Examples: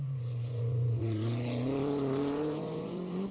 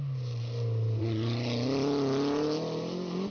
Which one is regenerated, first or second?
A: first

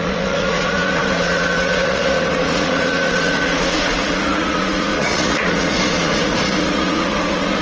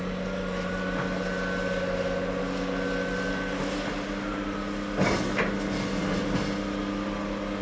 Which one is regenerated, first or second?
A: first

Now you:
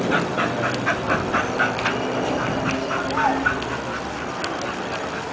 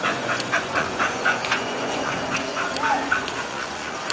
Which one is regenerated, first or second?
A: second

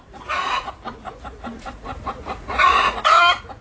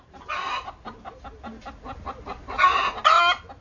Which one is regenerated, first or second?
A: first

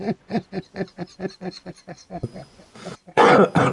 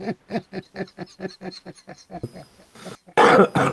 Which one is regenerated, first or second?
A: first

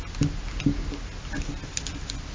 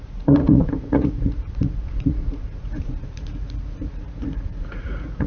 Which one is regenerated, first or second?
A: second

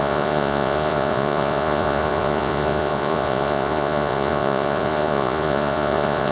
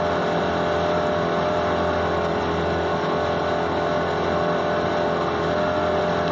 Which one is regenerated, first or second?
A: first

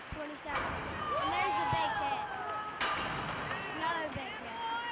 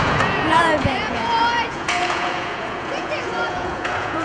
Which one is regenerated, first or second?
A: second